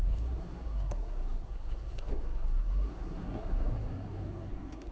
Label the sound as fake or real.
fake